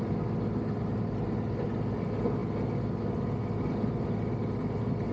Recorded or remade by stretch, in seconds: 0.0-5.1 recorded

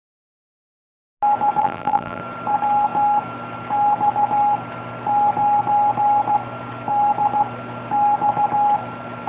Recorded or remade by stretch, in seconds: 0.0-1.6 recorded; 1.6-2.2 remade; 2.2-9.3 recorded

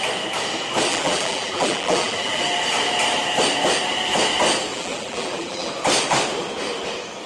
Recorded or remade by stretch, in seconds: 0.0-0.9 recorded; 0.9-2.4 remade; 2.4-4.7 recorded; 4.7-5.7 remade; 5.7-7.3 recorded